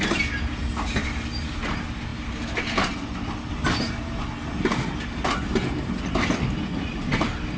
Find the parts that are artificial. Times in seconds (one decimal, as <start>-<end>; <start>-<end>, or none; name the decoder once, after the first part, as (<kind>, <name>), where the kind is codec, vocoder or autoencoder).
none